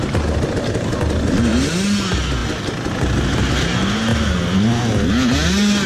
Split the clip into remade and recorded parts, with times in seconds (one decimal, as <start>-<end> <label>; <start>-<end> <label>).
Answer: 0.0-5.9 recorded